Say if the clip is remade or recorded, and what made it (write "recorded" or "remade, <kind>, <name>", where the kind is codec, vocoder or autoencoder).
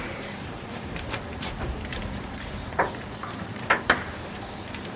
remade, vocoder, BigVGAN v2